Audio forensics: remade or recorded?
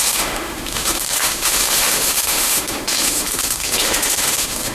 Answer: remade